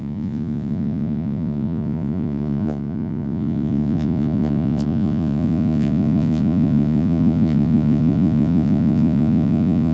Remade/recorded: remade